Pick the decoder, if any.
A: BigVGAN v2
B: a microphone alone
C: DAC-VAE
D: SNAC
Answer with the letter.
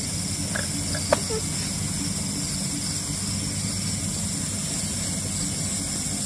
B